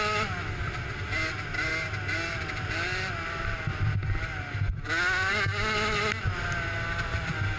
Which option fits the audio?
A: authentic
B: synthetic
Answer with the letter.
A